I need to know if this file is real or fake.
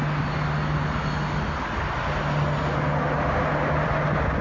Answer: real